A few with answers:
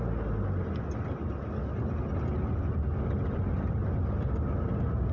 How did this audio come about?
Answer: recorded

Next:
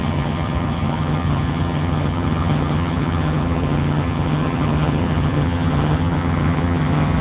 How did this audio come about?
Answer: remade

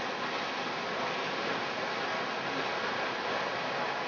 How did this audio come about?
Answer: recorded